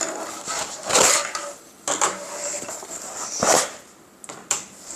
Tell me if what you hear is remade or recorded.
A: recorded